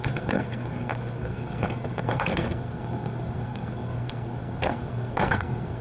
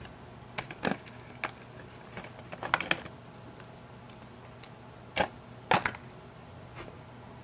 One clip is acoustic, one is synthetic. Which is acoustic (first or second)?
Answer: second